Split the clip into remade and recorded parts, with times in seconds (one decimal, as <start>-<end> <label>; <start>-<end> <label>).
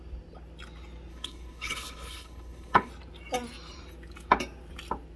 0.0-1.1 recorded; 1.1-2.9 remade; 2.9-5.2 recorded